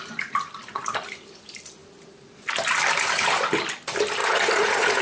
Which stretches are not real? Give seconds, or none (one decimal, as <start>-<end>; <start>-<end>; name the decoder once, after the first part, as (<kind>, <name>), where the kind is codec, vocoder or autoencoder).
4.2-5.0 (vocoder, Vocos)